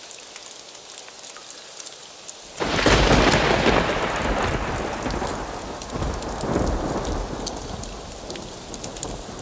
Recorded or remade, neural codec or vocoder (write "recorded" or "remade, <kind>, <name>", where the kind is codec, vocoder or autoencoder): recorded